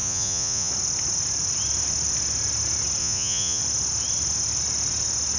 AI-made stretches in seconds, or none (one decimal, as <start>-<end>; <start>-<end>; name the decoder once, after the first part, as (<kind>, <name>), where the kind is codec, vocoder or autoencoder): 0.0-0.7 (vocoder, Vocos); 3.0-3.6